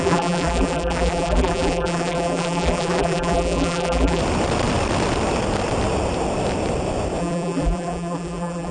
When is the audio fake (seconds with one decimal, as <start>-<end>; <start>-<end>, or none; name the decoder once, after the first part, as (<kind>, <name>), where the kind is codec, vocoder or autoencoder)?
0.0-4.2 (vocoder, BigVGAN v2); 7.2-8.7